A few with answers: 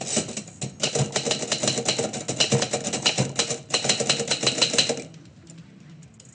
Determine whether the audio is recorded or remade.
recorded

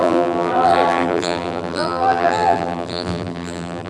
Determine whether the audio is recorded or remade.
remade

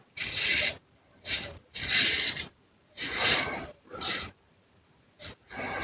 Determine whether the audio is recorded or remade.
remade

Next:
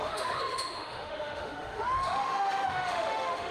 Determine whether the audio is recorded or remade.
remade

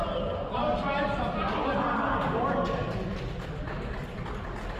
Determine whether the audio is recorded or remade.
recorded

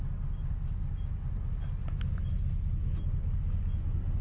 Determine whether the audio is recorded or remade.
recorded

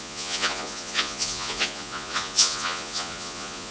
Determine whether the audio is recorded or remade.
remade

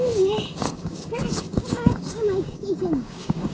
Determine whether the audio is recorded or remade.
remade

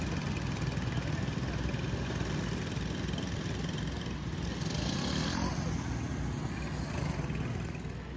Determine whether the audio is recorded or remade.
recorded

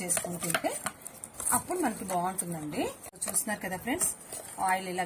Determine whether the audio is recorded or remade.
recorded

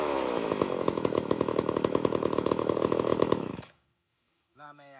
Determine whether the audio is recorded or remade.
remade